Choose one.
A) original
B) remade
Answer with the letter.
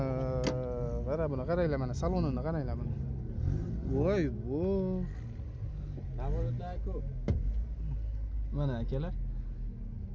A